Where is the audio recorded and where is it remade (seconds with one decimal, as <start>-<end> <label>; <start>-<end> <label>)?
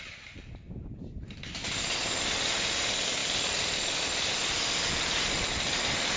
0.0-6.2 recorded